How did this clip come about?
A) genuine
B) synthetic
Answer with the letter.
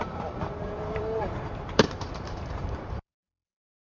B